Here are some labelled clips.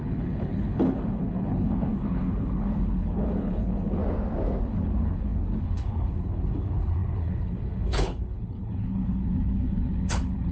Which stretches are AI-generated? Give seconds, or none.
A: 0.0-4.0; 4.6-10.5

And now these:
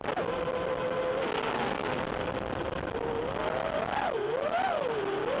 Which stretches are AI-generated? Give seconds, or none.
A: none

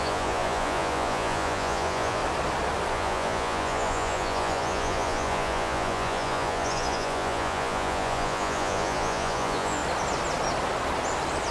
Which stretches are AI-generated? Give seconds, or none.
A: 0.0-2.2; 2.9-9.8

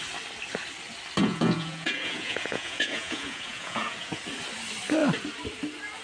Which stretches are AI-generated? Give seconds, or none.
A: 1.2-4.2

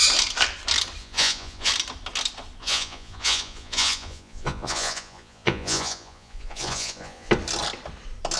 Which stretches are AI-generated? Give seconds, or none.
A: 1.0-1.7; 2.6-7.3